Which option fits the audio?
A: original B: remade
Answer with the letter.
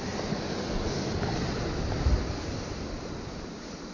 A